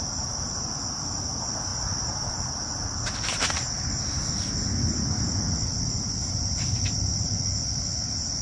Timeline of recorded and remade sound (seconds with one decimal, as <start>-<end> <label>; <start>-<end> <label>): 0.0-8.4 recorded